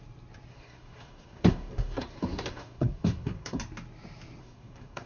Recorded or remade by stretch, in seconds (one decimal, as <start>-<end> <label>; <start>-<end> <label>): 0.0-0.5 recorded; 0.5-3.6 remade; 3.6-4.4 recorded; 4.4-5.1 remade